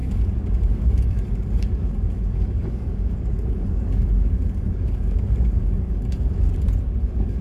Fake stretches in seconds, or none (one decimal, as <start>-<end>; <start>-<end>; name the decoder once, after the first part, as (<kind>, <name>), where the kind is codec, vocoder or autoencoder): 0.0-6.5 (codec, DAC); 7.0-7.4